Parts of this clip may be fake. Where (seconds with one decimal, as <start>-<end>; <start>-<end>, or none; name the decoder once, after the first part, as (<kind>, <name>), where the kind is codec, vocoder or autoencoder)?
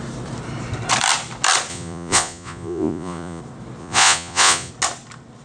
1.7-3.4 (vocoder, Vocos); 3.8-4.7